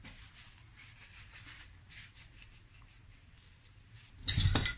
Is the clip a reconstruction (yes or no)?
no